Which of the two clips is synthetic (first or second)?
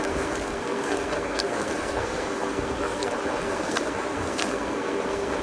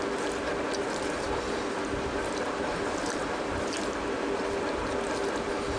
first